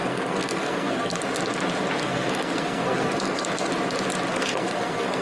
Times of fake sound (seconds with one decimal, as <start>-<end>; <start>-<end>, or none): 0.0-1.2; 2.0-3.7; 4.3-5.2